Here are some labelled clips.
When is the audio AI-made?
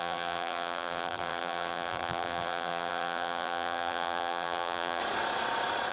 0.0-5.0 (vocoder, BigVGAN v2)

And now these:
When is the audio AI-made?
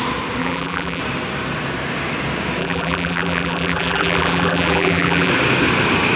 0.4-1.0 (vocoder, BigVGAN v2); 2.6-5.3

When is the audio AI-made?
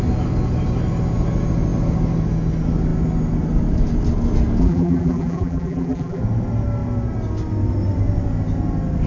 4.6-6.2 (vocoder, BigVGAN v2)